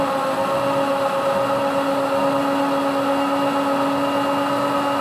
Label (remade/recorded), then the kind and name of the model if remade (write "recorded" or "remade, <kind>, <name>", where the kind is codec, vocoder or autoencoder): recorded